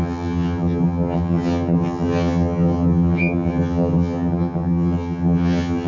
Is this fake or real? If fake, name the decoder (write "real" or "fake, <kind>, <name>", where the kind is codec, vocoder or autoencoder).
fake, vocoder, HiFi-GAN